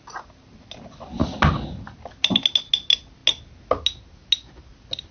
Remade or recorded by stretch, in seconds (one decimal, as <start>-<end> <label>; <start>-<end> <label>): 0.0-5.1 recorded